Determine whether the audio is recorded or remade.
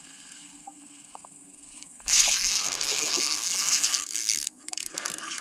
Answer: remade